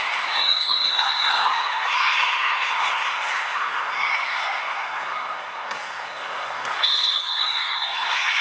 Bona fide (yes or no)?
no